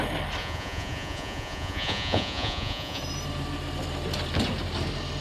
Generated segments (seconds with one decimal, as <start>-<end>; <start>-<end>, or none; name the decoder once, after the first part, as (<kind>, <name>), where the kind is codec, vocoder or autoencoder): 0.4-3.0 (vocoder, Vocos)